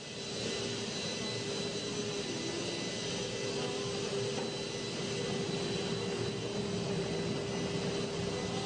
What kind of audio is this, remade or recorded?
recorded